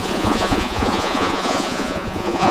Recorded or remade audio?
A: remade